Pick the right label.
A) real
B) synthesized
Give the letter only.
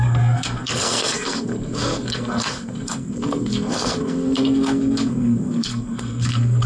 B